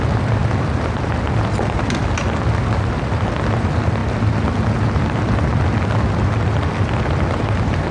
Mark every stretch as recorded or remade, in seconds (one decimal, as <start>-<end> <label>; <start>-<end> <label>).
0.0-7.9 recorded